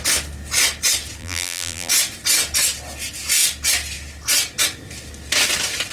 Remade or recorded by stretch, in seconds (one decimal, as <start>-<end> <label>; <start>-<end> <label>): 0.0-1.2 recorded; 1.2-1.9 remade; 1.9-5.9 recorded

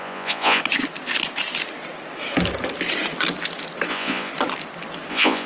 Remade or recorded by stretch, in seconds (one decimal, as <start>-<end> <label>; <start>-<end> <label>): 0.0-0.6 remade; 0.6-3.9 recorded; 3.9-4.3 remade; 4.3-5.1 recorded; 5.1-5.5 remade

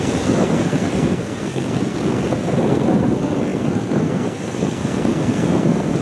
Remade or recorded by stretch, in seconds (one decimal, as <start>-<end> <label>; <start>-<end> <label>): 0.0-6.0 remade

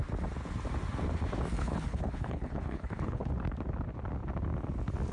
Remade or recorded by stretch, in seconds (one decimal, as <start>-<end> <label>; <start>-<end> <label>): 0.0-1.6 recorded; 1.6-3.3 remade; 3.3-5.1 recorded

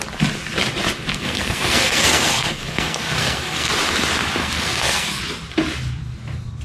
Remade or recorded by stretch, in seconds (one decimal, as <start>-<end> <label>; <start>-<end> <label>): 0.0-1.1 recorded; 1.1-3.7 remade; 3.7-4.4 recorded; 4.4-5.2 remade; 5.2-6.6 recorded

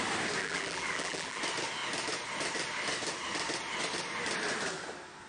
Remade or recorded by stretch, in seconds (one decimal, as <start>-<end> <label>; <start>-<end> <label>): 0.0-0.4 recorded; 0.4-1.4 remade; 1.4-5.3 recorded

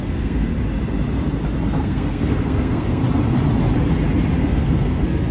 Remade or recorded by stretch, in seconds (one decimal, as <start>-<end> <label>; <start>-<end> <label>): 0.0-0.5 remade; 0.5-1.8 recorded; 1.8-3.0 remade; 3.0-4.4 recorded; 4.4-5.3 remade